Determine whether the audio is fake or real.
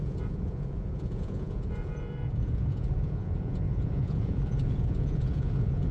fake